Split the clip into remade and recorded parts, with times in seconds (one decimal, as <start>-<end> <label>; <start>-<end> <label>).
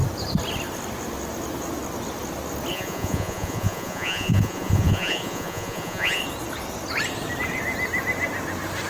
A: 0.0-2.7 recorded; 2.7-6.2 remade; 6.2-8.9 recorded